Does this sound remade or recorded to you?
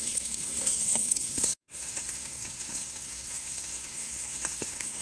remade